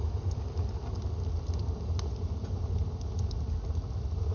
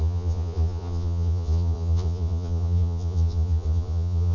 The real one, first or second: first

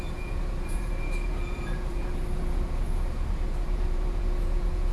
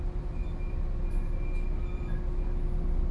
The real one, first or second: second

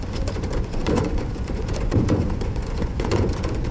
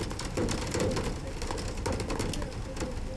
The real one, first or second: second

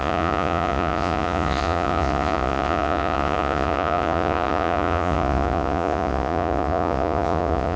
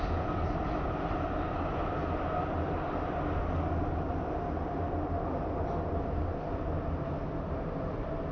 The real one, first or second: second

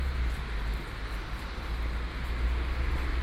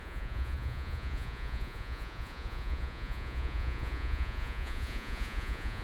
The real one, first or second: first